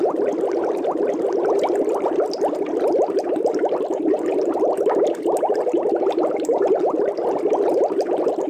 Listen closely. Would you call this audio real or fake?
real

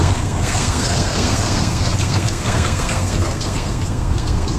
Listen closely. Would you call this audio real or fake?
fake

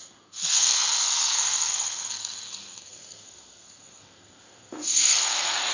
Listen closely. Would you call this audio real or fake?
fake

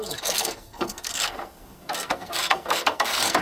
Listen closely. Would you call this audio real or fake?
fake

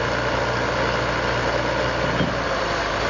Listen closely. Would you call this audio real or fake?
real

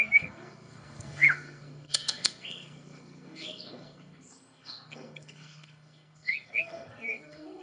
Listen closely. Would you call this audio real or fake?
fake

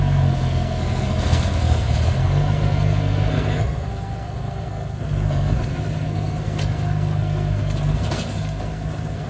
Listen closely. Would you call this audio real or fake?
fake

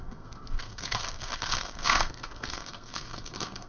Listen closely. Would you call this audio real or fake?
fake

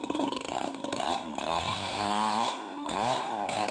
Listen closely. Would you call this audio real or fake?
fake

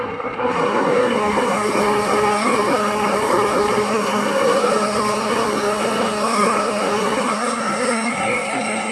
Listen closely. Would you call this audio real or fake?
fake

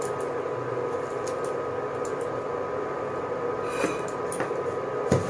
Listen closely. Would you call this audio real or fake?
real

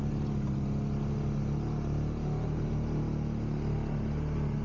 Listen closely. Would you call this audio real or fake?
real